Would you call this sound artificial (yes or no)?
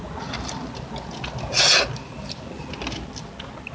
no